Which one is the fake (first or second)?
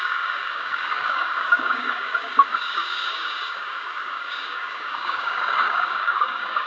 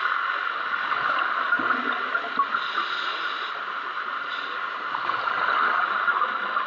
first